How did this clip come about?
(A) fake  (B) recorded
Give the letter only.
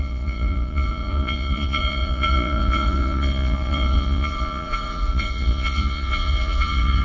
A